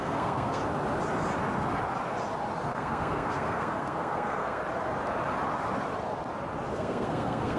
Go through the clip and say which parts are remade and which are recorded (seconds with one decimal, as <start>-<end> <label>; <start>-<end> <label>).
0.0-0.6 remade; 0.6-2.7 recorded; 2.7-4.6 remade; 4.6-6.7 recorded; 6.7-7.6 remade